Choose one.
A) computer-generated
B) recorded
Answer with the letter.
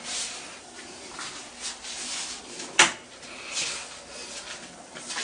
B